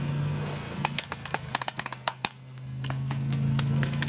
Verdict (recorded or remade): remade